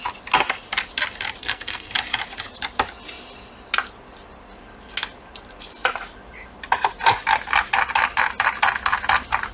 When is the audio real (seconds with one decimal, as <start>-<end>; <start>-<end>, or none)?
0.0-1.4; 1.9-9.5